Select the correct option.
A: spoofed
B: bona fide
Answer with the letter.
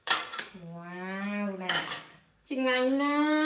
A